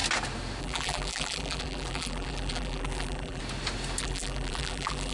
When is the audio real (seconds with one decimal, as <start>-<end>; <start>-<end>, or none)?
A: 0.0-0.6; 3.4-4.0